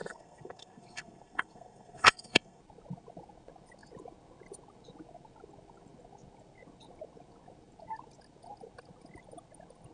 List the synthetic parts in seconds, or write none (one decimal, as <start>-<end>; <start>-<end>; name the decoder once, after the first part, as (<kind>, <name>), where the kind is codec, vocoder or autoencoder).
0.0-2.6 (codec, SNAC)